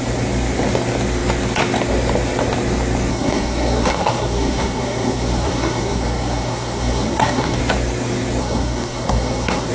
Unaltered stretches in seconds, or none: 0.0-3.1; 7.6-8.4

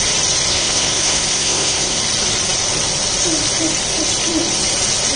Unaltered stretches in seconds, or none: 0.0-0.5; 2.0-5.2